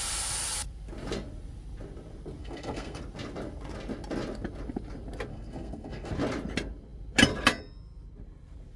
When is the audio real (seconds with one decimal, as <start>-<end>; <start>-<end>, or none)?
0.0-2.4; 3.0-5.3; 6.1-8.8